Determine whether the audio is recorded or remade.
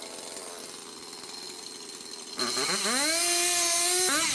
recorded